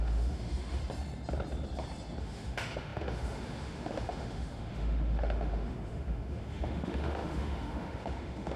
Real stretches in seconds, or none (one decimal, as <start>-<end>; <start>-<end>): 0.8-2.2